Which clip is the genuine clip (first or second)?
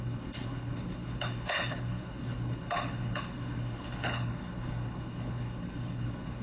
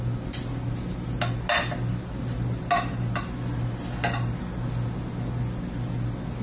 second